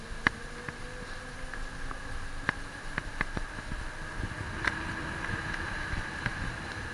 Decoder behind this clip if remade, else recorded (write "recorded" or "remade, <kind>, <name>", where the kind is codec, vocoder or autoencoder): recorded